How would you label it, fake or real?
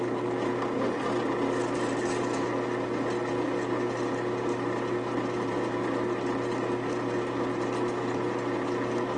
real